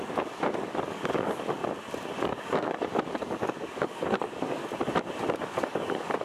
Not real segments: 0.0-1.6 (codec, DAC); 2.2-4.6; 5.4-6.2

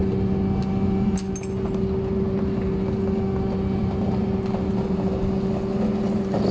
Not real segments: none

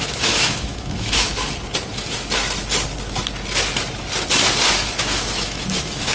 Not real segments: 0.0-1.3 (autoencoder, DAC-VAE); 5.0-6.1

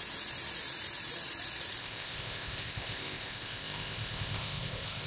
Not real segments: 1.8-5.1 (codec, ZipCodec)